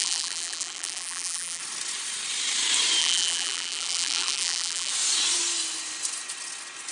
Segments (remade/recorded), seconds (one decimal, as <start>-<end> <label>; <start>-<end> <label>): 0.0-1.6 remade; 1.6-3.0 recorded; 3.0-4.9 remade; 4.9-6.9 recorded